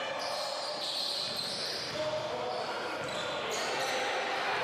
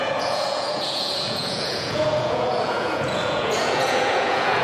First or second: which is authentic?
first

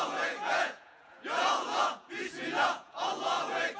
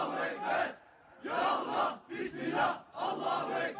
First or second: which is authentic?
second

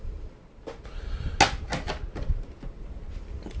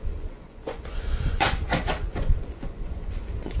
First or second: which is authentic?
first